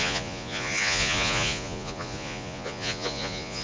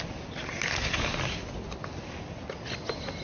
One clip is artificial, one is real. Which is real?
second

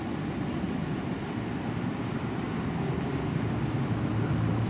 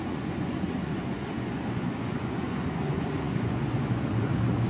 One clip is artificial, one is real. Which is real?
first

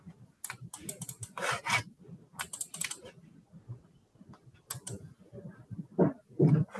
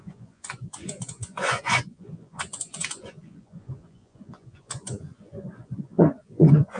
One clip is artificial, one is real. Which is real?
first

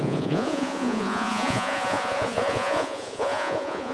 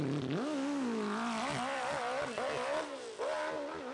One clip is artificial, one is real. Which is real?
second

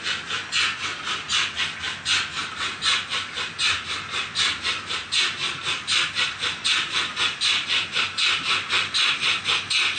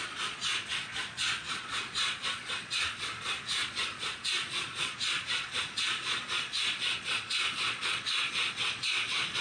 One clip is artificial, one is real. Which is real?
first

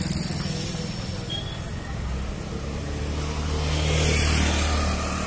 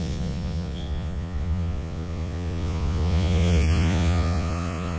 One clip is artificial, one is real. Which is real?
first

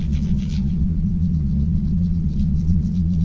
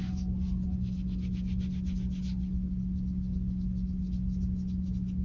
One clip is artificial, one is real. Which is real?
second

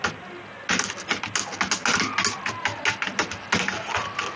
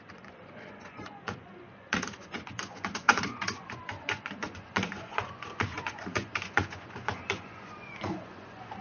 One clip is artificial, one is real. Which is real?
first